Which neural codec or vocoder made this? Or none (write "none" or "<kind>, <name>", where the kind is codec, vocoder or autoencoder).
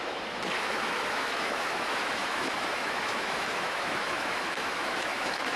autoencoder, DAC-VAE